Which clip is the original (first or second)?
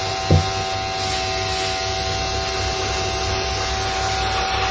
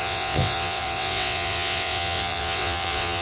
first